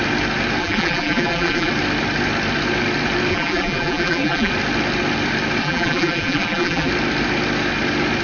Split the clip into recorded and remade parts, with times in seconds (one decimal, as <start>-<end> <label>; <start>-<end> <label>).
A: 0.0-0.6 recorded; 0.6-1.7 remade; 1.7-3.3 recorded; 3.3-4.5 remade; 4.5-5.6 recorded; 5.6-6.9 remade; 6.9-8.2 recorded